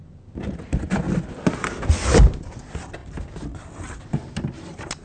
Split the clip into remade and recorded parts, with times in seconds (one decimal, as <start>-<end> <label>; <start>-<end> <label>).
0.0-5.0 recorded